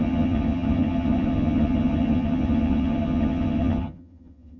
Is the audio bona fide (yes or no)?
no